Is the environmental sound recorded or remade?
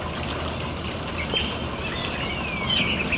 recorded